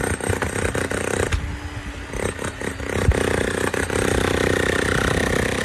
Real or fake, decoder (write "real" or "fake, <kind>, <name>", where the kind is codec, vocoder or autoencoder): real